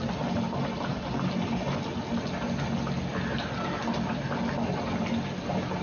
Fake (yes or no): no